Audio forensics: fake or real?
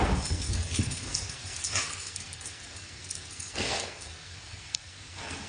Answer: fake